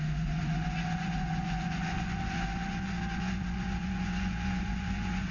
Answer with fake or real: fake